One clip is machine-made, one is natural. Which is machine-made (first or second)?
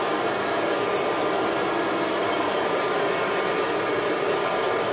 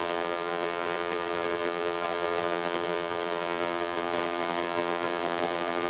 second